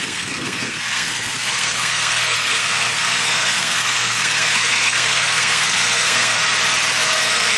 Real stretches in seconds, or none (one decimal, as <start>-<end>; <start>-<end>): 6.4-7.0